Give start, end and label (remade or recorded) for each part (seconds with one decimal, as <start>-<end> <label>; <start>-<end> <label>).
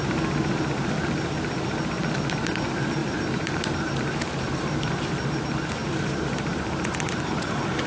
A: 0.0-3.0 recorded; 3.0-4.9 remade; 4.9-5.8 recorded; 5.8-7.3 remade; 7.3-7.9 recorded